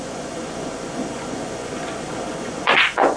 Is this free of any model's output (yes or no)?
no